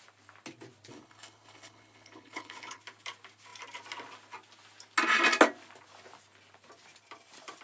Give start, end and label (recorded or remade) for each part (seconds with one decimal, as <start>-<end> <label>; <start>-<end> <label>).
0.0-0.9 recorded; 0.9-2.8 remade; 2.8-7.6 recorded